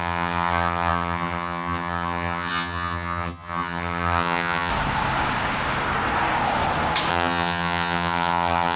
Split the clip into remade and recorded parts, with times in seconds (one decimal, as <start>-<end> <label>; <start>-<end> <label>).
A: 0.0-4.7 remade; 4.7-7.1 recorded; 7.1-8.8 remade